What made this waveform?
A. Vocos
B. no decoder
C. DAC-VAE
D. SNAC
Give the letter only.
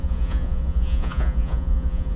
A